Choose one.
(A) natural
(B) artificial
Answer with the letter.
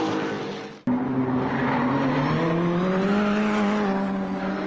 A